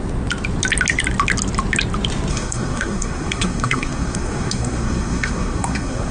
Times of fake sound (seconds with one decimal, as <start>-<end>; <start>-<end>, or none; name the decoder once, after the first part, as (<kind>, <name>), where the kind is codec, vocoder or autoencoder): 2.3-6.1 (codec, SNAC)